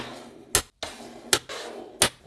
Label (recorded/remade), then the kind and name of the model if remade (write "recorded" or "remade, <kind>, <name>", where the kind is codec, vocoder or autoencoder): recorded